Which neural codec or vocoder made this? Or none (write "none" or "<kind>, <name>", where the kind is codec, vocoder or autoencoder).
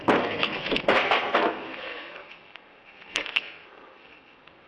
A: codec, SNAC